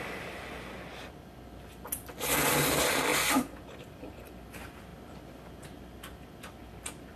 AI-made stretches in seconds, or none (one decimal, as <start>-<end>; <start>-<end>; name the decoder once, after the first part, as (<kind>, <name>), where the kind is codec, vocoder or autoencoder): 3.1-4.3 (vocoder, BigVGAN v2)